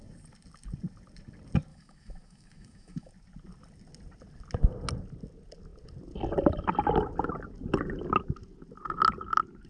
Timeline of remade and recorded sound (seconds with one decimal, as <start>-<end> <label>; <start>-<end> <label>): 0.0-1.7 recorded; 1.7-3.1 remade; 3.1-9.7 recorded

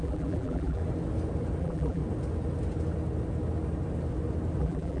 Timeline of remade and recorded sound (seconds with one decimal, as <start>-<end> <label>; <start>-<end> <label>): 0.0-0.8 remade; 0.8-1.6 recorded; 1.6-2.0 remade; 2.0-4.6 recorded; 4.6-5.0 remade

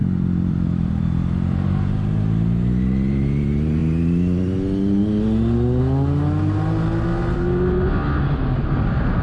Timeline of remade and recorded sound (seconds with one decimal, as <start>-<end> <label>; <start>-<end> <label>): 0.0-1.3 remade; 1.3-9.2 recorded

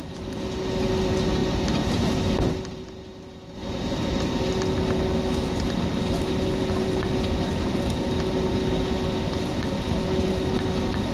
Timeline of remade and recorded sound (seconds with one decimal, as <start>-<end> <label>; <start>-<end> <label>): 0.0-11.1 recorded

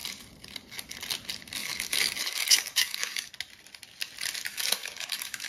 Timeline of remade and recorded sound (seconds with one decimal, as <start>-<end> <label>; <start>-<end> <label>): 0.0-1.6 recorded; 1.6-3.3 remade; 3.3-4.5 recorded; 4.5-5.5 remade

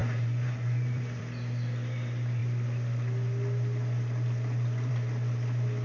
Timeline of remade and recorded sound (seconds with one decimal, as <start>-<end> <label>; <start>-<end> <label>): 0.0-1.2 remade; 1.2-5.8 recorded